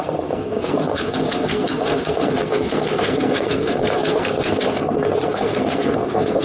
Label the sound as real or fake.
fake